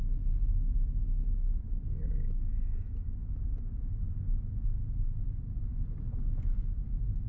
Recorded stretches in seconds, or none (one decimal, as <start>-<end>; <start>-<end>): 0.0-7.3